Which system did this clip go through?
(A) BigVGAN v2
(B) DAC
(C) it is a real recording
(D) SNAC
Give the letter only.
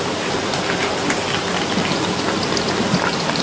C